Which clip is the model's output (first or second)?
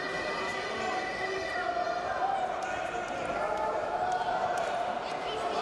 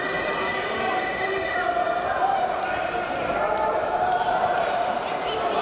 second